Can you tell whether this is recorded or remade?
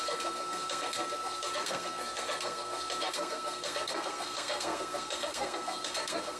remade